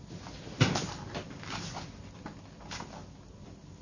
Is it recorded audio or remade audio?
recorded